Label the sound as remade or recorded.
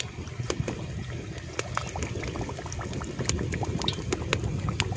recorded